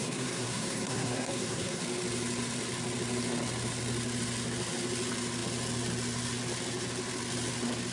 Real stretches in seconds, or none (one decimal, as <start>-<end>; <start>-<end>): 1.8-7.9